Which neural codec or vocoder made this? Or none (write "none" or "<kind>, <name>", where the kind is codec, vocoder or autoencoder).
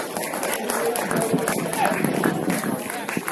none